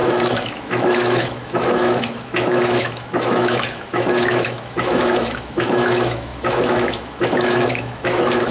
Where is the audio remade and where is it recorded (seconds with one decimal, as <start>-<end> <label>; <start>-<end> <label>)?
0.0-8.5 remade